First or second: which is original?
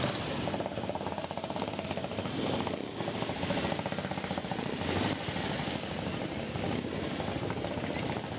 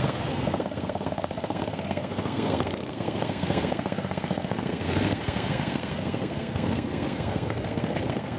first